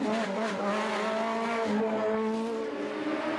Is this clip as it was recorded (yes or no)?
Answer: yes